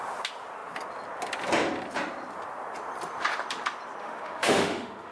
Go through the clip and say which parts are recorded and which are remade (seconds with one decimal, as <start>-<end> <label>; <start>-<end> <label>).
0.0-4.0 recorded; 4.0-5.1 remade